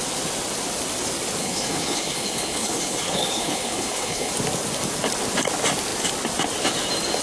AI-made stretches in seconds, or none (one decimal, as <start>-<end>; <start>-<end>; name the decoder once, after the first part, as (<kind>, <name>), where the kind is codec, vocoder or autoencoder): 1.4-4.3 (codec, HILCodec)